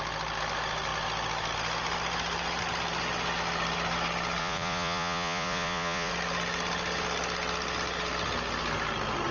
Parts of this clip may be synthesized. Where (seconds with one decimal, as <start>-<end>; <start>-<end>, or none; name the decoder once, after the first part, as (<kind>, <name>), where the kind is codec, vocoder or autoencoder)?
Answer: 4.4-6.1 (vocoder, Vocos)